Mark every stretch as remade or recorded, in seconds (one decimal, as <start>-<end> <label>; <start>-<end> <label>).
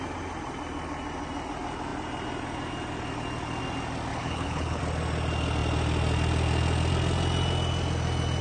0.0-4.1 recorded; 4.1-4.8 remade; 4.8-8.4 recorded